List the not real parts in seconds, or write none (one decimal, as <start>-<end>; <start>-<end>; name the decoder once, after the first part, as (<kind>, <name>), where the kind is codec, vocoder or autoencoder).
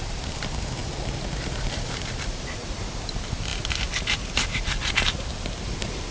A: 0.0-6.1 (vocoder, BigVGAN v2)